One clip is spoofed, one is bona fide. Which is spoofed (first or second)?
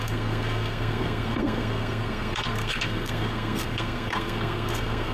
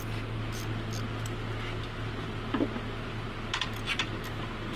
first